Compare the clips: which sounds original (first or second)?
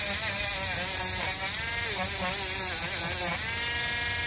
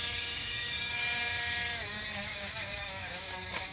first